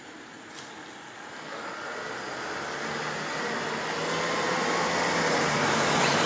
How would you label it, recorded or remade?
recorded